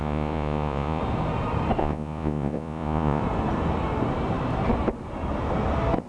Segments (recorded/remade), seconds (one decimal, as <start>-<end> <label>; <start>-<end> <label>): 0.0-1.0 remade; 1.0-1.8 recorded; 1.8-3.2 remade; 3.2-6.1 recorded